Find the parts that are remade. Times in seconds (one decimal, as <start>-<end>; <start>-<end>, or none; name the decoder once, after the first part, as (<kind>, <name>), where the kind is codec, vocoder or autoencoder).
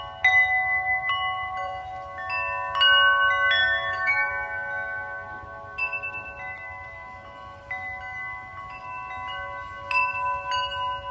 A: 3.6-4.3 (codec, DAC)